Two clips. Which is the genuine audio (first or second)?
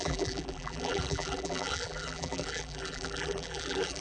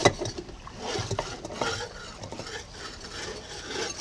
second